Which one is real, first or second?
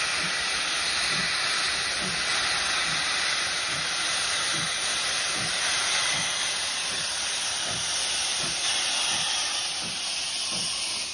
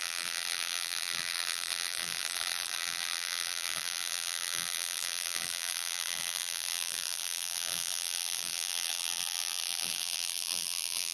first